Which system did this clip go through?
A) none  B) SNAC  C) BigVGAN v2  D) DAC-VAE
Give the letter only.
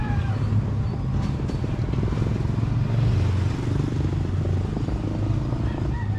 A